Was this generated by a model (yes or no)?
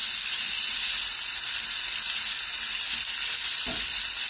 no